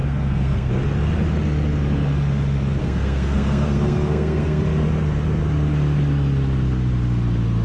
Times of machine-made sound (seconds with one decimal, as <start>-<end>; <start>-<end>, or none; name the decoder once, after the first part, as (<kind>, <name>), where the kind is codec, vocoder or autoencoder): 0.0-0.7 (codec, SNAC); 2.8-4.6